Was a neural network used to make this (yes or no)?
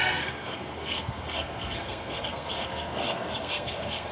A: yes